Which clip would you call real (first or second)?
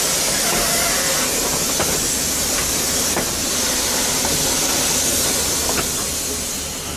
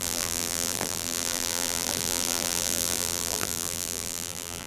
first